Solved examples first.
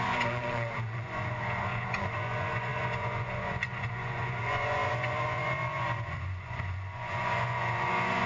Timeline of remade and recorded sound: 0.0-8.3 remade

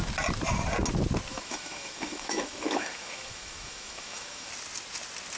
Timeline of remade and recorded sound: 0.0-1.3 recorded; 1.3-4.5 remade; 4.5-5.4 recorded

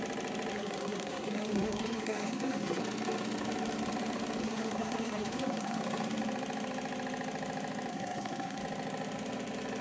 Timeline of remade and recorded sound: 0.0-0.5 recorded; 0.5-2.8 remade; 2.8-4.4 recorded; 4.4-5.8 remade; 5.8-7.9 recorded; 7.9-8.6 remade; 8.6-9.8 recorded

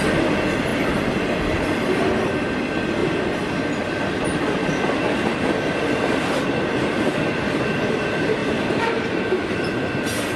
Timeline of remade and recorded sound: 0.0-10.4 remade